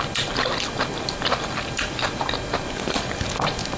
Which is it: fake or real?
real